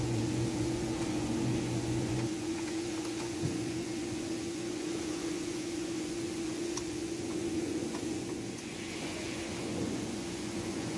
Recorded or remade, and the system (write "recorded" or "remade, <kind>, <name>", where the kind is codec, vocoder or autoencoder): remade, vocoder, Vocos